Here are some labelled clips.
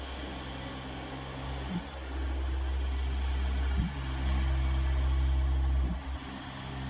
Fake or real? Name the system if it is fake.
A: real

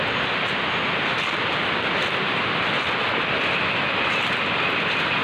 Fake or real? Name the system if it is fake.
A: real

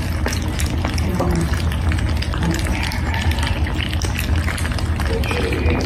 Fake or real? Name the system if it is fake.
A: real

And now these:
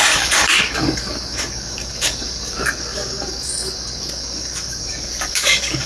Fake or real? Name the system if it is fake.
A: fake, codec, DAC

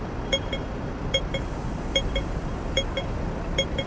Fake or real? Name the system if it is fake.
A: fake, vocoder, BigVGAN v2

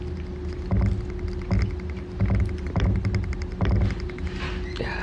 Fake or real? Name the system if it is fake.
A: real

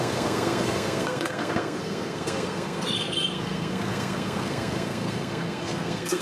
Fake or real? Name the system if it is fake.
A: fake, codec, SNAC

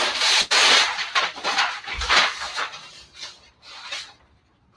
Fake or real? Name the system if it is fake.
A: fake, vocoder, BigVGAN v2